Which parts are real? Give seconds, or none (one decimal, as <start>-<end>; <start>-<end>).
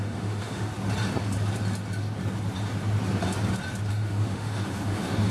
0.7-3.9